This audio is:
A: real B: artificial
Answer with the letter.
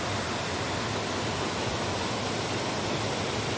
A